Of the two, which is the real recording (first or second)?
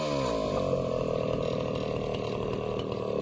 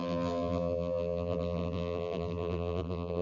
first